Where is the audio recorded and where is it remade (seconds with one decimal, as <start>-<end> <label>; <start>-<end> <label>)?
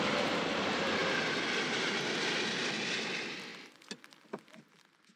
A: 0.0-5.2 recorded